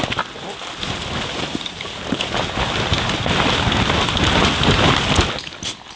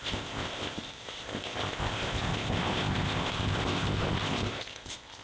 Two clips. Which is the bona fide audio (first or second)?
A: first